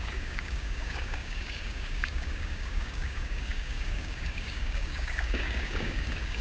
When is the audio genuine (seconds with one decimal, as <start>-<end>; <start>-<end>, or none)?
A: none